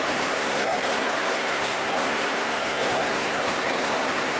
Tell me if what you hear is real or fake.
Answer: fake